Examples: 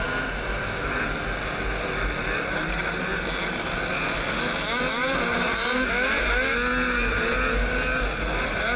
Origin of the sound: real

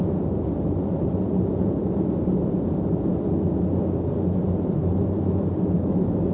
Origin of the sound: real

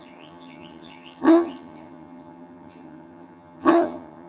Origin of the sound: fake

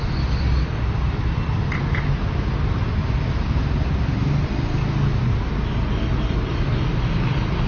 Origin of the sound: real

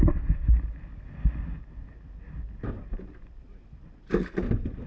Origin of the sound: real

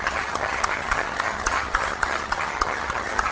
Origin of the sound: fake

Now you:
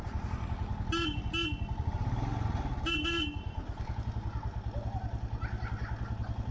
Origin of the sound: real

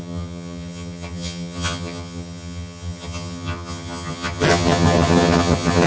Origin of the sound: fake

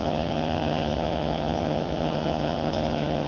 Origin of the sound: fake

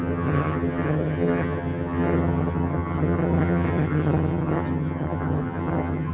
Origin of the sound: fake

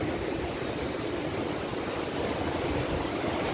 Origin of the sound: real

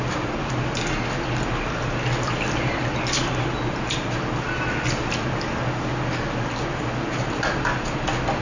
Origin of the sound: real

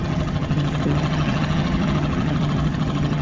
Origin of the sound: fake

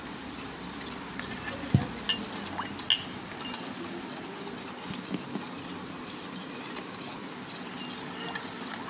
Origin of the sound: real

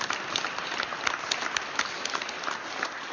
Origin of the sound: real